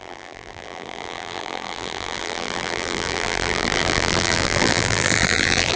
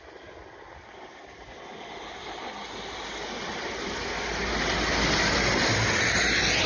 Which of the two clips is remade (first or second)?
first